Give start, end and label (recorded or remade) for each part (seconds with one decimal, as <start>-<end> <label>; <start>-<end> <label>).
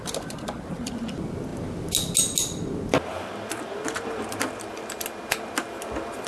0.0-6.3 recorded